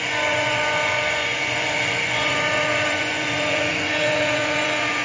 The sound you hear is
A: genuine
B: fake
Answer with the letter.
B